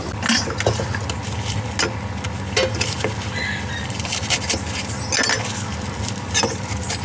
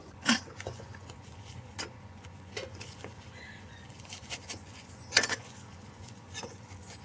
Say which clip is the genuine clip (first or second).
first